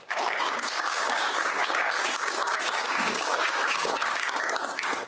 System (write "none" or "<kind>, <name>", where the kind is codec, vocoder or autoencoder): codec, DAC